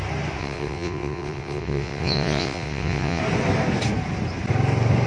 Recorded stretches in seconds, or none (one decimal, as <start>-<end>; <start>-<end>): 0.0-0.4; 3.2-5.1